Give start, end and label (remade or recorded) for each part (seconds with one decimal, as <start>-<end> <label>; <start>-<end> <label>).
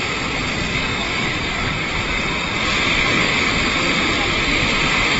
0.0-0.8 recorded; 0.8-1.9 remade; 1.9-3.0 recorded; 3.0-3.5 remade; 3.5-5.2 recorded